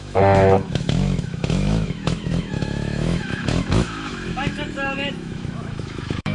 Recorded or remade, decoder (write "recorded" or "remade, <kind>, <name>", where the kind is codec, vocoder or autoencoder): remade, autoencoder, DAC-VAE